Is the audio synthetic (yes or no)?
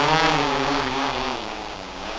yes